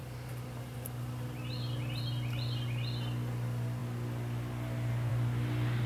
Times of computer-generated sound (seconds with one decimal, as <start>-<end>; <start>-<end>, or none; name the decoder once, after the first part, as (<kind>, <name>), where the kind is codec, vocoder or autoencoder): none